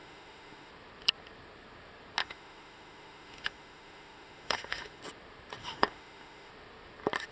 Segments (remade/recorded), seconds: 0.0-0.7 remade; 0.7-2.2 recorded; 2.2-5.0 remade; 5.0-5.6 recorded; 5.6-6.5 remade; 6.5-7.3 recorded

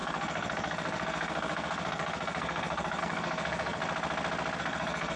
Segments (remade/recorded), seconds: 0.0-3.8 remade; 3.8-4.6 recorded; 4.6-5.2 remade